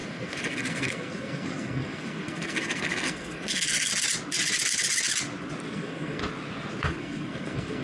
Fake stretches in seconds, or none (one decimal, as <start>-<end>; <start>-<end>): 0.0-3.9; 5.7-6.2; 6.8-7.8